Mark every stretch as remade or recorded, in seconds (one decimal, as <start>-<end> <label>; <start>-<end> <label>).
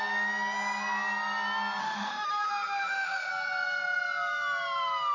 0.0-1.8 recorded; 1.8-3.3 remade; 3.3-5.1 recorded